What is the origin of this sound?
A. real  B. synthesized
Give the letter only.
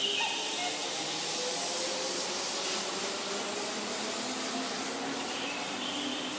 A